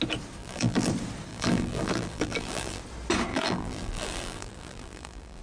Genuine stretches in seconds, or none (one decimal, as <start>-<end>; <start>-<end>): 0.0-0.4; 0.9-1.3; 2.8-3.3